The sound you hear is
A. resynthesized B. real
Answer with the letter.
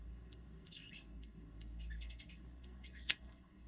A